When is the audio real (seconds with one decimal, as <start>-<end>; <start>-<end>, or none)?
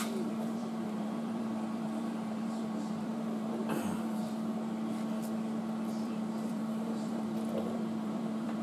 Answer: 4.2-6.0